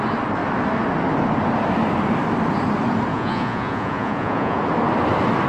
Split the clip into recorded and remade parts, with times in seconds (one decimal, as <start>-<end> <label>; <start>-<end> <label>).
0.0-3.1 recorded; 3.1-4.6 remade; 4.6-5.5 recorded